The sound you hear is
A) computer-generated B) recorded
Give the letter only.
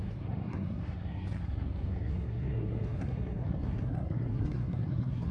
A